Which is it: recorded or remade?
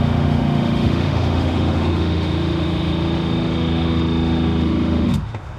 remade